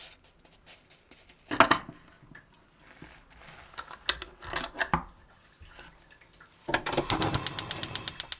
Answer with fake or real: real